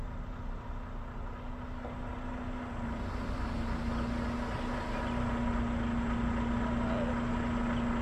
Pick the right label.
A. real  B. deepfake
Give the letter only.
A